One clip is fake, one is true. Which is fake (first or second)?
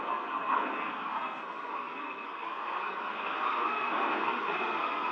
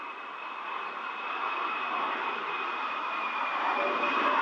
first